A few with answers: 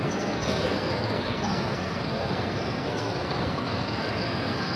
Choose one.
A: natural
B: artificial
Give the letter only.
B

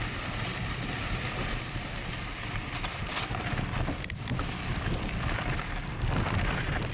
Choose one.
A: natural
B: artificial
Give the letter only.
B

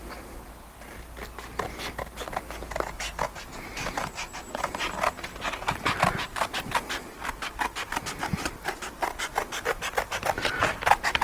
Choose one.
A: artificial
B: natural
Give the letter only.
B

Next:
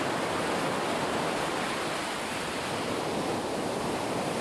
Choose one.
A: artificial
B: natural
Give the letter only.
A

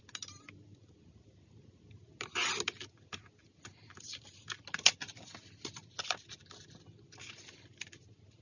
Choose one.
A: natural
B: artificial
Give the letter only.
A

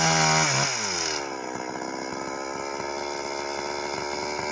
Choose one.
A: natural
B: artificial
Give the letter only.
A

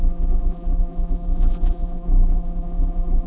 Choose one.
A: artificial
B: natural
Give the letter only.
A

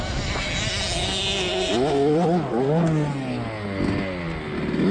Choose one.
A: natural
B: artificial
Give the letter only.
A